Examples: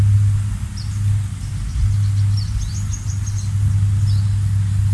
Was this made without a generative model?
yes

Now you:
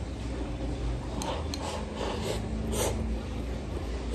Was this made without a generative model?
yes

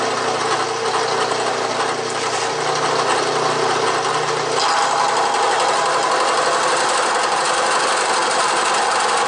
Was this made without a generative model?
yes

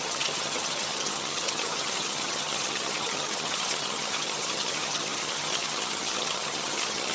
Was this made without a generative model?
no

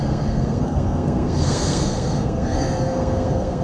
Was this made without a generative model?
no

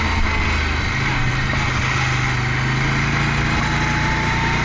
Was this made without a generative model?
yes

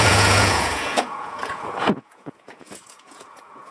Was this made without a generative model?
no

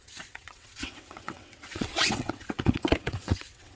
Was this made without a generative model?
no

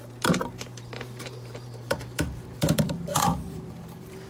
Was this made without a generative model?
no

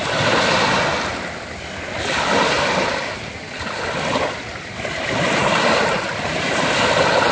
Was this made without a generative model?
yes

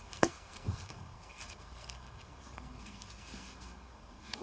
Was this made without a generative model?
no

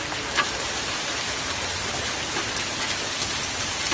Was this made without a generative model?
yes